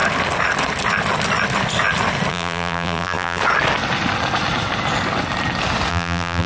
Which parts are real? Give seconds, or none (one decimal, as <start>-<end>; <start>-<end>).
0.0-2.3; 3.4-5.9